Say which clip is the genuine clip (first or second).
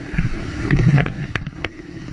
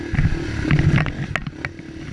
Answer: second